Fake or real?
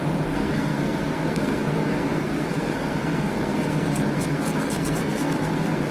fake